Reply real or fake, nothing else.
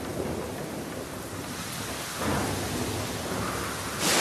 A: real